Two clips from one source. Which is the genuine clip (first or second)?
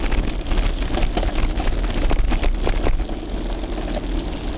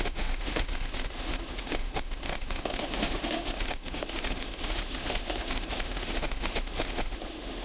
first